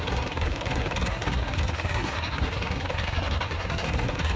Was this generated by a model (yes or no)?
yes